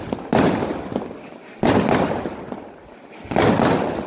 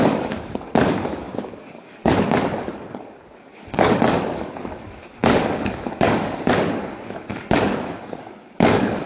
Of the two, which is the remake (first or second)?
second